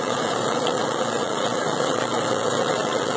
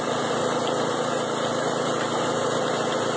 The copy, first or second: first